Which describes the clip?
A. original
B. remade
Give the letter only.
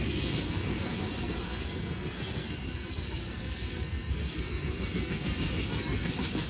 B